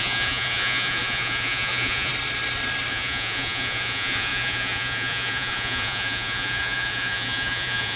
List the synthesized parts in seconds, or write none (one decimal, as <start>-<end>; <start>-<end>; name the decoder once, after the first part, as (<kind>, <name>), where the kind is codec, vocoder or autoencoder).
0.0-2.1 (vocoder, Vocos); 2.9-8.0